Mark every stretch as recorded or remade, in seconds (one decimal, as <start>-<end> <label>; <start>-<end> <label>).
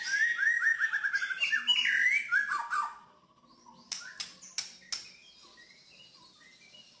0.0-7.0 recorded